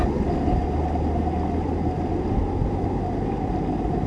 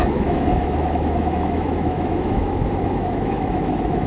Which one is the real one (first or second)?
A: first